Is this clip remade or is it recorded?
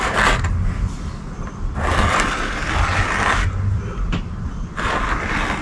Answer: recorded